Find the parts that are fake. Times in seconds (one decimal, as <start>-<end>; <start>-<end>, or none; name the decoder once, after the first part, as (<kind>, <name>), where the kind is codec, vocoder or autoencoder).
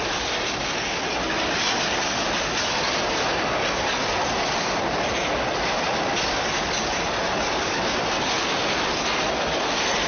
none